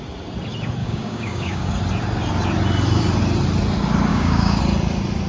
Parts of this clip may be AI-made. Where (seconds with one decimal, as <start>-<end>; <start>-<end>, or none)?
0.8-1.7; 4.1-4.6